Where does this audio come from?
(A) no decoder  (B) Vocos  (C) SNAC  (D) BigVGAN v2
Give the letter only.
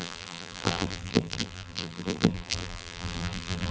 D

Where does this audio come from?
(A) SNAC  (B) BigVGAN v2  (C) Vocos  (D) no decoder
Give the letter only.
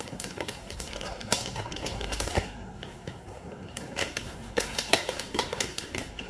A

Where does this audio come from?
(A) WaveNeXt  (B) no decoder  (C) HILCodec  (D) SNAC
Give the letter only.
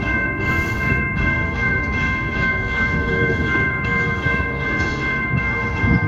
D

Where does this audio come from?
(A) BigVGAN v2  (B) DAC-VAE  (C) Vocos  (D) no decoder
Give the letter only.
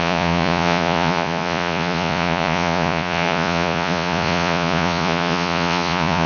C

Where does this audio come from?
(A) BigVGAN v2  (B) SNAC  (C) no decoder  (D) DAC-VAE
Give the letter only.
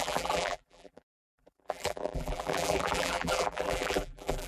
A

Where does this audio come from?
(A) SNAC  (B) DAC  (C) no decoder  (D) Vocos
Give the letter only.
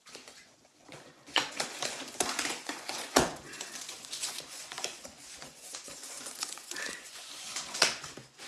D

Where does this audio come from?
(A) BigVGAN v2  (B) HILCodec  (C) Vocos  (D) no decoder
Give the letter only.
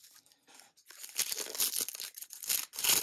D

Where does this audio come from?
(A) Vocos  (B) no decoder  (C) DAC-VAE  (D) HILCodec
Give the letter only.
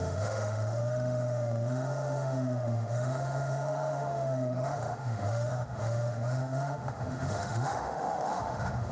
C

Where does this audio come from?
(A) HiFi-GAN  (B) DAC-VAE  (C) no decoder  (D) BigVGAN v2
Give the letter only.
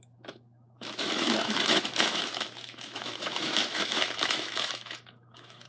B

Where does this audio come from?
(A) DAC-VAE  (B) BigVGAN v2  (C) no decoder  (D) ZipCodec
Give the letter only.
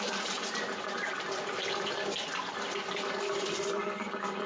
C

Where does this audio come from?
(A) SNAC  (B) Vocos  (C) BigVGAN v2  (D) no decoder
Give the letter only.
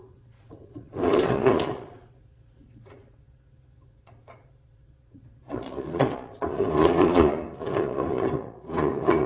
B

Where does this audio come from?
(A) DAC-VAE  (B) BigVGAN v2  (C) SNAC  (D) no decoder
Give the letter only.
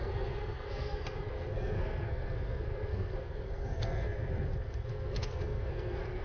C